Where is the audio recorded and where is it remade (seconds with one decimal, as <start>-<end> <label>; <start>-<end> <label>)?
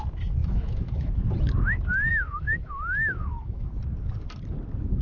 0.0-0.4 recorded; 0.4-1.1 remade; 1.1-2.1 recorded; 2.1-3.7 remade; 3.7-5.0 recorded